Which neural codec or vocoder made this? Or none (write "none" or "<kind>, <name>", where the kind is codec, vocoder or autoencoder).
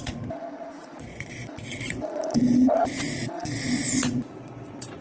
vocoder, Vocos